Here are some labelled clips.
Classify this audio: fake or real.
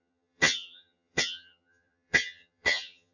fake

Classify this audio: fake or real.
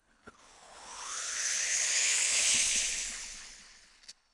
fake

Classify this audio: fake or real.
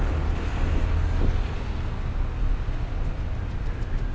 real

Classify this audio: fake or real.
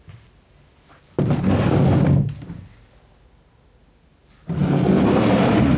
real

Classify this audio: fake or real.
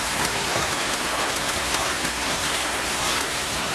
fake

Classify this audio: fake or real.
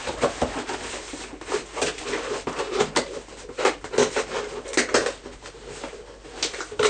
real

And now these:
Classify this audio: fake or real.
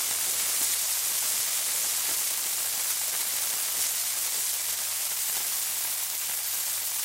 real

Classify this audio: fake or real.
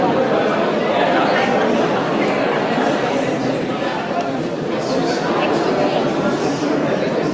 real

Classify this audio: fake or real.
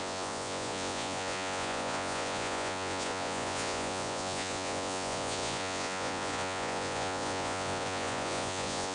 fake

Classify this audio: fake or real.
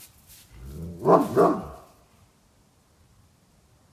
real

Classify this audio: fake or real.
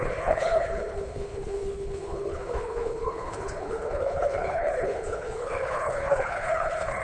fake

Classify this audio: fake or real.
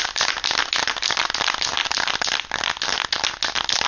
real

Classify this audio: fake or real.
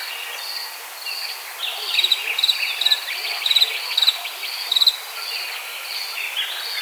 real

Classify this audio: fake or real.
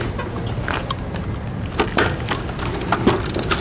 real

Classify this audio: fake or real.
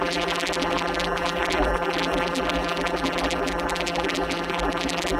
fake